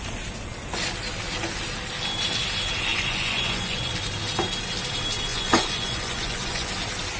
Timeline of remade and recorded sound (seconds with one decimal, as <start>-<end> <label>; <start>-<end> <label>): 0.0-2.9 recorded; 2.9-3.9 remade; 3.9-5.3 recorded; 5.3-6.7 remade; 6.7-7.2 recorded